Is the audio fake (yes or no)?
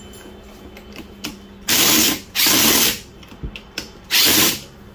no